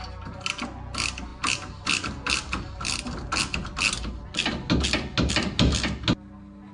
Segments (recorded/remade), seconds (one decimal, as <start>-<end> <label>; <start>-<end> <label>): 0.0-6.7 recorded